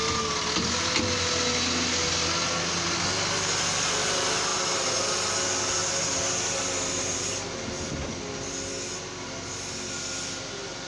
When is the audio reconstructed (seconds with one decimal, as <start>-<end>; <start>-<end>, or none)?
none